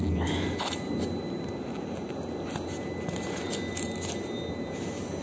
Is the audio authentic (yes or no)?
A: yes